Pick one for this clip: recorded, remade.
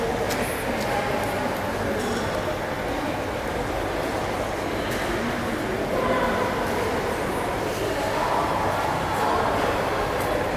recorded